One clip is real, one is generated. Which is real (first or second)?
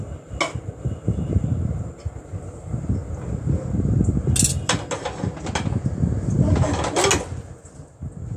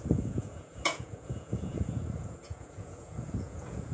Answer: first